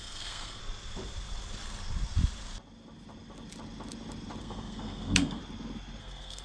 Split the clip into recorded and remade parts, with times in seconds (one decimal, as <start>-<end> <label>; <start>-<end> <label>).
0.0-0.6 remade; 0.6-4.4 recorded; 4.4-5.4 remade; 5.4-6.0 recorded; 6.0-6.4 remade